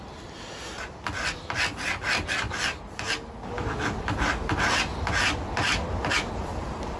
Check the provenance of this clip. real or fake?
real